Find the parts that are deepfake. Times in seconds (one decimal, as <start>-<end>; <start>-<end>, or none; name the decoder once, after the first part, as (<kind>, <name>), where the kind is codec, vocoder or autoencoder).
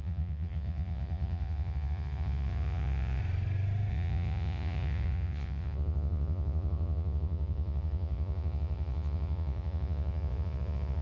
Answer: 0.0-3.2 (vocoder, Vocos); 3.9-11.0